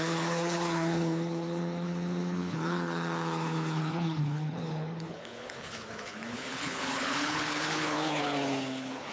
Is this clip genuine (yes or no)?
no